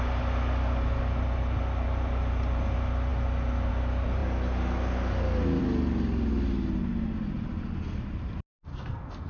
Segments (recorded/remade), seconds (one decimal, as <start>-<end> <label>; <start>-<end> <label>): 0.0-8.7 recorded; 8.7-9.3 remade